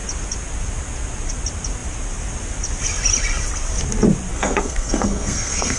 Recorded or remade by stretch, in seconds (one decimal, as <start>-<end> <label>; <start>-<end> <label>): 0.0-4.3 recorded; 4.3-5.8 remade